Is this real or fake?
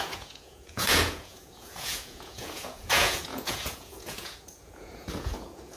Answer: fake